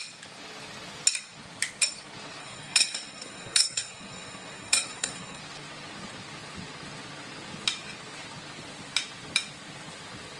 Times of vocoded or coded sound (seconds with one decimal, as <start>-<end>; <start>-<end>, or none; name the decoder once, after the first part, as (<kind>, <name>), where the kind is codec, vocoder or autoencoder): 2.4-5.4 (codec, SNAC)